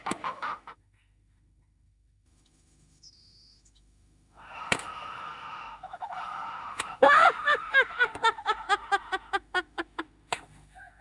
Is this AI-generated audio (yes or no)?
yes